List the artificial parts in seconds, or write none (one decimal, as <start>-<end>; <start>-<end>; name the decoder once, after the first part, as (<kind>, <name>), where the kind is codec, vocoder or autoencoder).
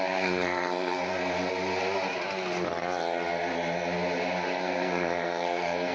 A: 0.0-1.1 (codec, SNAC); 4.6-5.9